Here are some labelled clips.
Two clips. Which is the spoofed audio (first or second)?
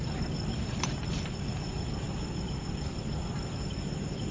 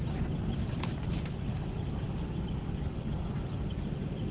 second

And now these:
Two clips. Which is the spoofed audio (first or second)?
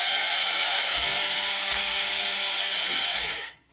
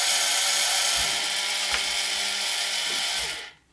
first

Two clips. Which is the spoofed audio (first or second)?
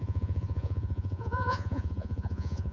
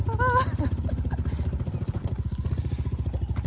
first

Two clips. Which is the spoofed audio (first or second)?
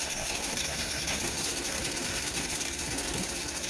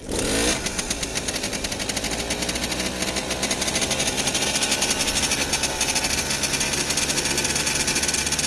first